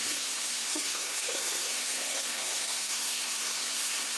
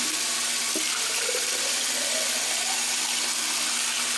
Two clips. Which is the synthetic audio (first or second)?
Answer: first